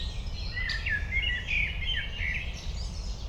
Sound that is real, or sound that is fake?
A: real